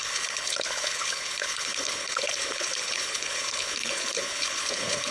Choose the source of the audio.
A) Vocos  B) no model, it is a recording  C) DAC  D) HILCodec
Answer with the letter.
D